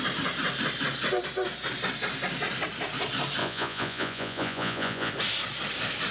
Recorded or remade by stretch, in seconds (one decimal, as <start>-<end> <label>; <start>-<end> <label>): 0.0-3.4 recorded; 3.4-5.1 remade; 5.1-6.1 recorded